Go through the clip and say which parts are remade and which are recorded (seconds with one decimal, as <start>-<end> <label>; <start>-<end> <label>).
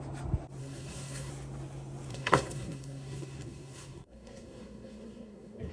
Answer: 0.0-0.6 recorded; 0.6-1.3 remade; 1.3-2.1 recorded; 2.1-5.7 remade